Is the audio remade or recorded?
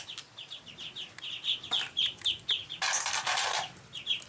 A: recorded